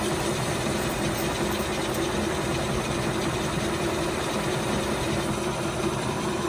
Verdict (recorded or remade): recorded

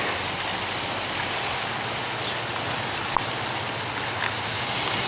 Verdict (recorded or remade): recorded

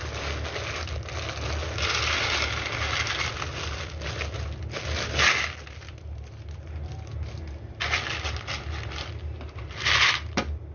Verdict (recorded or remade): recorded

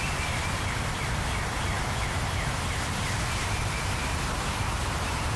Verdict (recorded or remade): recorded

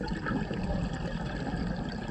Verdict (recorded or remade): recorded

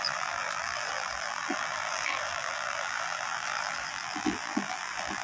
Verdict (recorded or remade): remade